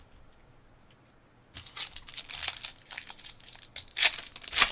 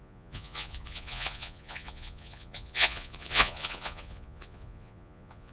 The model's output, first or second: second